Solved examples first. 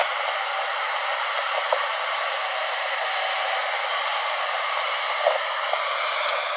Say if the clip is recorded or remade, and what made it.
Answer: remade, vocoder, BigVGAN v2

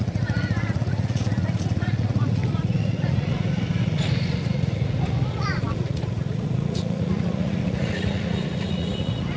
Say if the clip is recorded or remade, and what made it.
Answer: remade, vocoder, Vocos